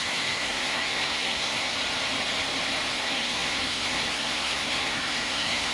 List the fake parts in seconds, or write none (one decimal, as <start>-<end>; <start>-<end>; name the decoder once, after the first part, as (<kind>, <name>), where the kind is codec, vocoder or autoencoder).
0.0-1.7 (codec, SNAC); 2.9-5.7